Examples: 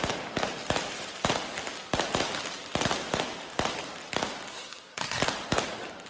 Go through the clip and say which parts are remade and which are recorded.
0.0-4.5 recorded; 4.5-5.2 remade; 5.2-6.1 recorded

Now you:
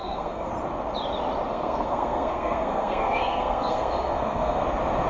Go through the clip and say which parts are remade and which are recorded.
0.0-0.5 remade; 0.5-1.5 recorded; 1.5-4.6 remade; 4.6-5.1 recorded

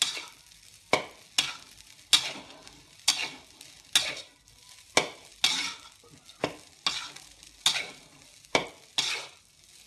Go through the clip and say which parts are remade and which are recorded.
0.0-9.9 recorded

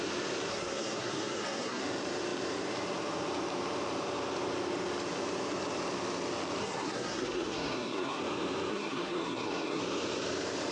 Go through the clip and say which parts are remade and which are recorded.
0.0-0.5 recorded; 0.5-1.8 remade; 1.8-6.6 recorded; 6.6-8.2 remade; 8.2-8.7 recorded; 8.7-9.8 remade; 9.8-10.7 recorded

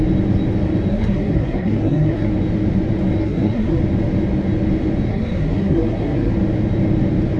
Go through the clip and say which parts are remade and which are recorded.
0.0-0.9 recorded; 0.9-2.3 remade; 2.3-3.2 recorded; 3.2-3.8 remade; 3.8-5.1 recorded; 5.1-6.3 remade; 6.3-7.4 recorded

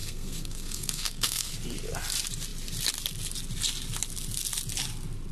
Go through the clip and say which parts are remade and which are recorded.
0.0-1.5 remade; 1.5-5.3 recorded

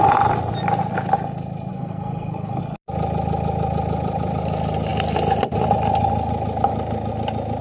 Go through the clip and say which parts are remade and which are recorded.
0.0-1.7 recorded; 1.7-2.6 remade; 2.6-7.6 recorded